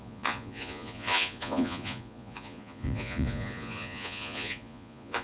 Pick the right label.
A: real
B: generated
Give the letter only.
B